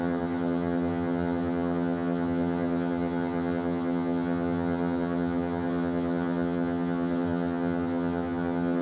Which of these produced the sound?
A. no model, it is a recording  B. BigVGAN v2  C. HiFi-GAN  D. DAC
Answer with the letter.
C